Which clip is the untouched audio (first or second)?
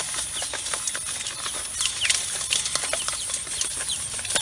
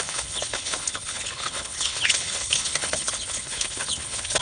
first